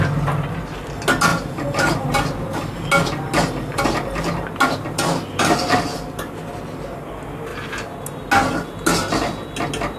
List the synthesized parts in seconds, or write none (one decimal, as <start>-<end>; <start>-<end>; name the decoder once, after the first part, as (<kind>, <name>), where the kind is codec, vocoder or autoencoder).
1.3-2.0 (vocoder, BigVGAN v2)